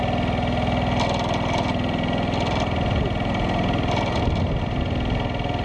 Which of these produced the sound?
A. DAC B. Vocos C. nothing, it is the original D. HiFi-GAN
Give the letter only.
C